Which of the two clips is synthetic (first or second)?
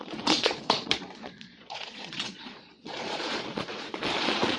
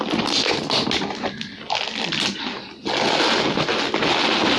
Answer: first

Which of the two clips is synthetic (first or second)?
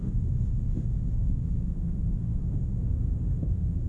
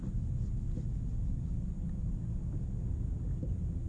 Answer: first